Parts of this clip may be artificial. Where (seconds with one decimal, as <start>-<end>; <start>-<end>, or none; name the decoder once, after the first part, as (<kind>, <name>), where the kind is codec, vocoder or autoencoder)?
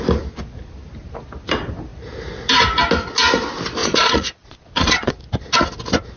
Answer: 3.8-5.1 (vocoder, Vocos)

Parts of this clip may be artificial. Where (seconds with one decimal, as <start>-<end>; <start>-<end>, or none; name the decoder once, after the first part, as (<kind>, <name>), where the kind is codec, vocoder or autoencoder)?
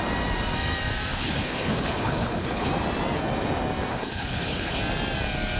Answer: 1.1-2.7 (codec, HILCodec); 3.9-4.8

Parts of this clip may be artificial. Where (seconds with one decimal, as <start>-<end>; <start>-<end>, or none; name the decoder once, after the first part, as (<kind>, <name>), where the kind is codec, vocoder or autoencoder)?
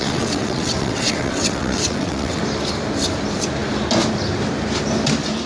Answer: 0.0-2.4 (vocoder, WaveNeXt)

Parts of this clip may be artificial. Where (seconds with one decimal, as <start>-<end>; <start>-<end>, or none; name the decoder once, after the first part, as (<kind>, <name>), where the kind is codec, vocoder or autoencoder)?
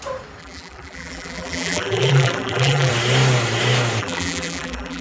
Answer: 0.4-2.9 (vocoder, BigVGAN v2); 4.0-5.0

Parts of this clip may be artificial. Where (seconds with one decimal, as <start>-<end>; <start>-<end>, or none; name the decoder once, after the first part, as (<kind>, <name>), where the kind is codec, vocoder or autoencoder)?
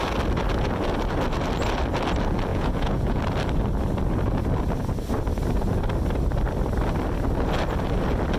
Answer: 2.5-3.2 (vocoder, Vocos)